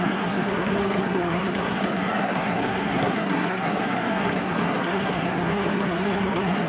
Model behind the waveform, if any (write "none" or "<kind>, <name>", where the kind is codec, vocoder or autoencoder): codec, SNAC